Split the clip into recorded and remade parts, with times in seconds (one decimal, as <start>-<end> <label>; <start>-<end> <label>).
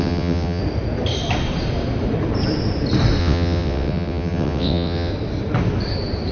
0.0-0.6 remade; 0.6-3.2 recorded; 3.2-5.1 remade; 5.1-6.3 recorded